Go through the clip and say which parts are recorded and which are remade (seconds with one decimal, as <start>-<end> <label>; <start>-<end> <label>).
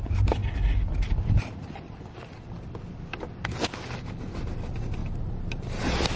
0.0-5.0 recorded; 5.0-5.8 remade; 5.8-6.2 recorded